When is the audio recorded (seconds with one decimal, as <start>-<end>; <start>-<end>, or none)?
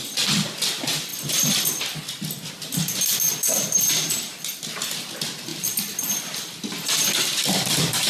0.0-5.5